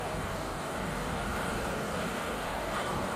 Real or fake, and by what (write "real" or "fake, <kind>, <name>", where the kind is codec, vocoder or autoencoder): fake, codec, DAC